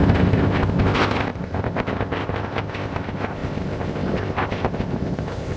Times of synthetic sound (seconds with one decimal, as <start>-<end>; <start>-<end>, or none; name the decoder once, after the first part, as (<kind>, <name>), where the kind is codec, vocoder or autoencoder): 0.0-5.6 (codec, ZipCodec)

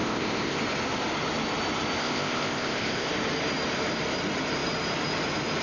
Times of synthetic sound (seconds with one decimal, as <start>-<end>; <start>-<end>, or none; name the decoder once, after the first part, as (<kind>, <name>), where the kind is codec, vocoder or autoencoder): 0.0-0.6 (codec, ZipCodec); 2.0-3.1

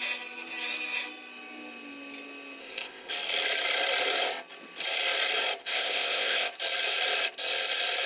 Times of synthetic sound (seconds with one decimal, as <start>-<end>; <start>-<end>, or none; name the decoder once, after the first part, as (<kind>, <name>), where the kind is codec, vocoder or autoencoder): 2.6-3.1 (codec, ZipCodec); 5.6-6.5